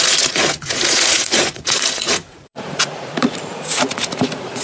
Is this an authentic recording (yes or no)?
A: no